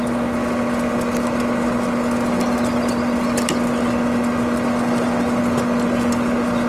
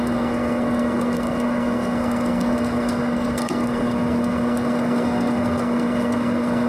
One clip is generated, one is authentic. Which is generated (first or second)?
second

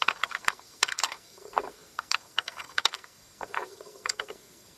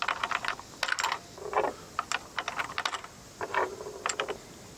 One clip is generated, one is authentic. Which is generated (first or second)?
first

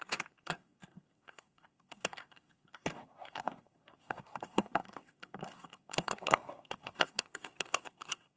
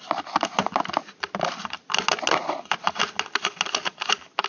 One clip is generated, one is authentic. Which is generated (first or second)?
first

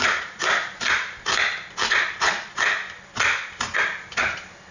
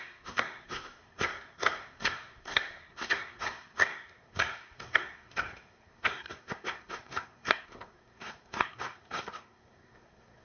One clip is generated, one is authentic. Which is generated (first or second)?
second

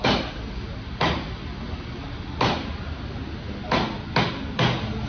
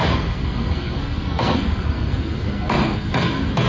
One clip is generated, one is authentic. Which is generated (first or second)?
second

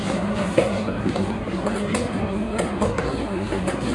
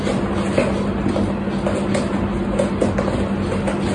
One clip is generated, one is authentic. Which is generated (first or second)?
first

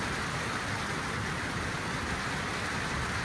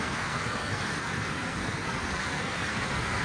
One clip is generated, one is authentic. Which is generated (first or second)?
second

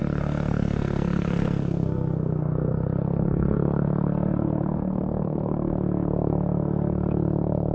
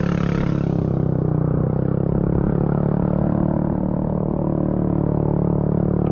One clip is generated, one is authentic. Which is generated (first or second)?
first